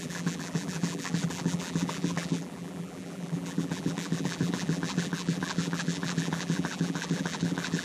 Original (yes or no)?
no